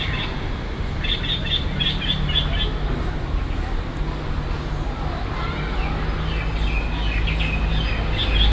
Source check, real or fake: real